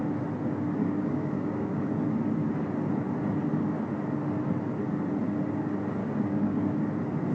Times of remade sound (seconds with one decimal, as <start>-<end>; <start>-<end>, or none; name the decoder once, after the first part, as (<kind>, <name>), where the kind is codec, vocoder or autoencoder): 0.8-1.8 (codec, DAC); 6.0-6.6